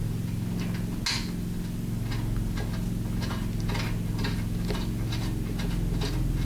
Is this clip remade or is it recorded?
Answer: recorded